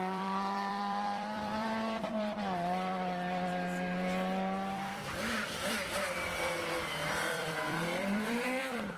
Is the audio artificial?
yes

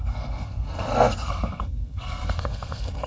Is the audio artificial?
yes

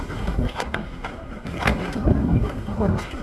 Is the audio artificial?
yes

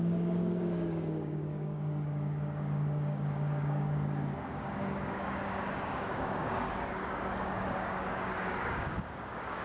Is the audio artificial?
yes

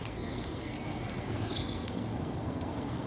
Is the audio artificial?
yes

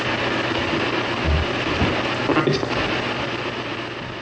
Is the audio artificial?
no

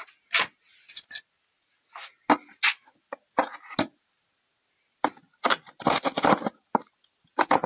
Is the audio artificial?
no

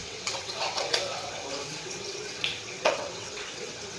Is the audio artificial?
yes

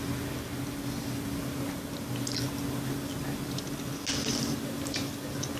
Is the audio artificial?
no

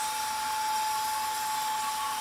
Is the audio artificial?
no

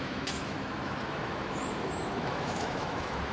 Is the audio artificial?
yes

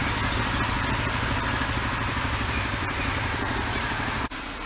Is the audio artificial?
no